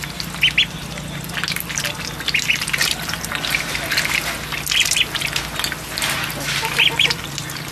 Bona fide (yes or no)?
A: yes